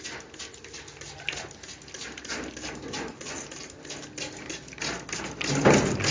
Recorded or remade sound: recorded